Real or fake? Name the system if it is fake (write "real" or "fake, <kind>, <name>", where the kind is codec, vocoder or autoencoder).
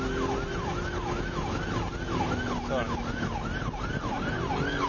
real